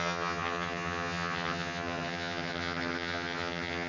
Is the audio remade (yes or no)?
yes